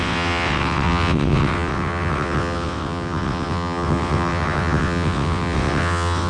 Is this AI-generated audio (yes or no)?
yes